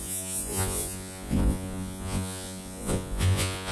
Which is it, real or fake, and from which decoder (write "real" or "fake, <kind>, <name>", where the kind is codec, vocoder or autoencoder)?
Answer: fake, vocoder, Vocos